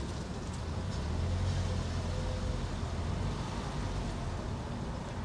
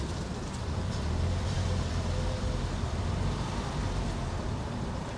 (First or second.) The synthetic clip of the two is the second